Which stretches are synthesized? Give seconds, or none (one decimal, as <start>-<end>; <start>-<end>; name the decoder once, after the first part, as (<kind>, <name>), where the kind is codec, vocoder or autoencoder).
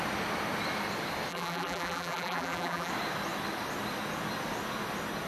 1.3-2.9 (vocoder, BigVGAN v2)